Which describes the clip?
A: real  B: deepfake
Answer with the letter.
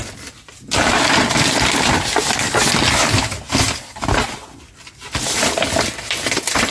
A